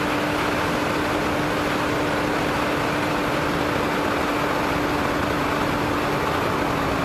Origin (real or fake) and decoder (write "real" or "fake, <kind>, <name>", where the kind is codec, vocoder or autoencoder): real